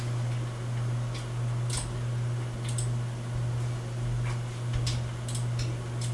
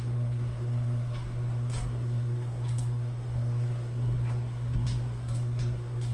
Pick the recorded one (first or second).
first